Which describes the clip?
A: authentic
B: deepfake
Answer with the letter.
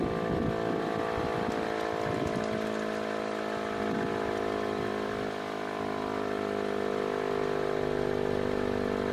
A